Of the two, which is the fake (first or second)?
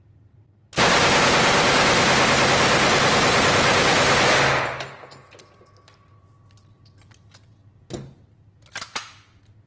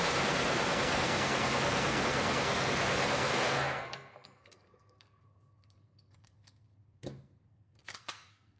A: second